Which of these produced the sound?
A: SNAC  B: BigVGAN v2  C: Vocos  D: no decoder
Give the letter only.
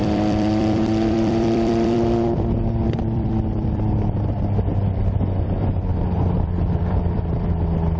B